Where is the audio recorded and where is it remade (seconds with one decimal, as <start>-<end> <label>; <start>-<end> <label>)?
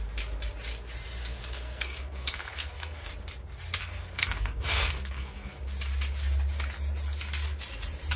0.0-1.2 recorded; 1.2-3.1 remade; 3.1-3.8 recorded; 3.8-5.6 remade; 5.6-8.2 recorded